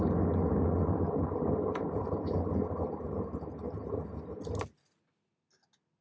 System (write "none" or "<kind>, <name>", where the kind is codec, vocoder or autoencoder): none